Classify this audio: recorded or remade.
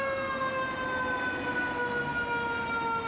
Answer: recorded